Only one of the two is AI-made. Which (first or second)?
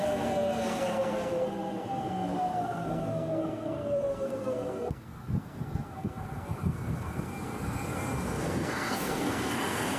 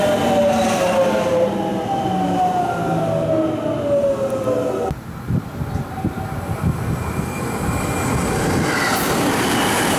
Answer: first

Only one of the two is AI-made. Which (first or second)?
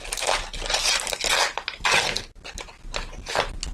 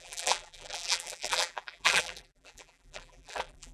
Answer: second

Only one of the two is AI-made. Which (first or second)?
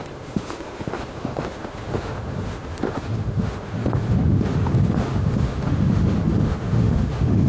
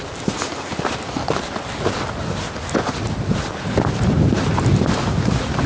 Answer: first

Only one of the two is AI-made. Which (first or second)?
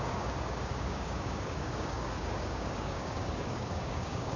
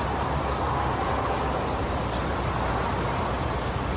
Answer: first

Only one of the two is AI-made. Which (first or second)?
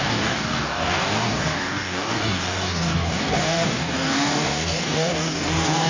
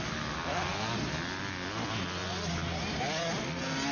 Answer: first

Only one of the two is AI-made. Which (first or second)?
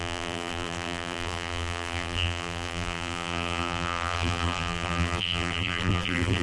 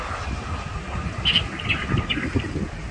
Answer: first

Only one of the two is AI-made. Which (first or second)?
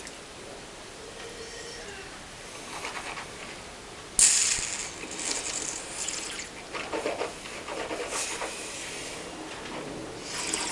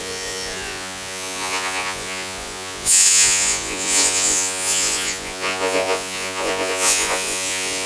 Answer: second